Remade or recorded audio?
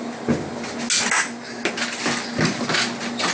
recorded